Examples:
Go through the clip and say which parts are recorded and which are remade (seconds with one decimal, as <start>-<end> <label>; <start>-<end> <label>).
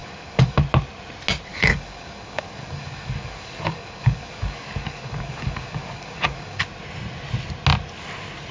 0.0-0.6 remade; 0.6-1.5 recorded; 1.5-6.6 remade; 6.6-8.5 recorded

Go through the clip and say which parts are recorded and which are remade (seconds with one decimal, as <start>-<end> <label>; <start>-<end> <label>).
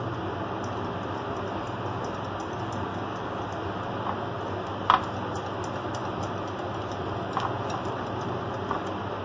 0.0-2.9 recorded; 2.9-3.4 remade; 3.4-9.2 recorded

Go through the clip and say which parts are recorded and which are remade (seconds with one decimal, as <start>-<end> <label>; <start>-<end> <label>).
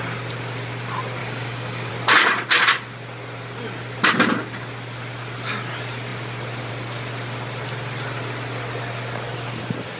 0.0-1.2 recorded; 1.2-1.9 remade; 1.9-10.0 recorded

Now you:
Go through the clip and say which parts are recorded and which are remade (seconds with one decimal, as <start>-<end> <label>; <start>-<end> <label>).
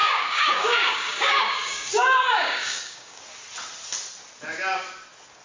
0.0-3.2 remade; 3.2-5.4 recorded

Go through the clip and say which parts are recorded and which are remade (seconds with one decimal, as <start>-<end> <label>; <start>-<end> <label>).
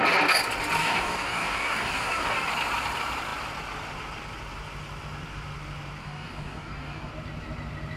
0.0-0.8 recorded; 0.8-2.5 remade; 2.5-6.0 recorded; 6.0-7.1 remade; 7.1-8.0 recorded